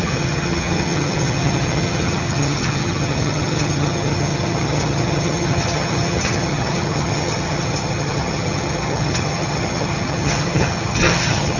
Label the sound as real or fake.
fake